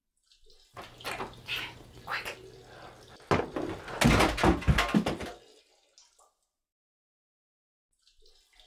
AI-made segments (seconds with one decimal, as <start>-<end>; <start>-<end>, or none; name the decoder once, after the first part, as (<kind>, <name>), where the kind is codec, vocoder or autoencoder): none